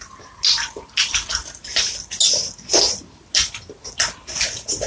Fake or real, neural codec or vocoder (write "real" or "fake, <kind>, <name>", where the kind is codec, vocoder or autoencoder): real